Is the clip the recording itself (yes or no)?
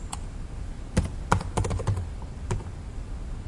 yes